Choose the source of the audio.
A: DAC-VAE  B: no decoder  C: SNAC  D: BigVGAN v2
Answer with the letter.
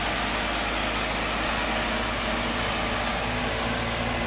B